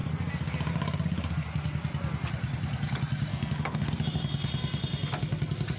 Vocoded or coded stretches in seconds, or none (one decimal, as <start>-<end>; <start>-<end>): 3.3-3.9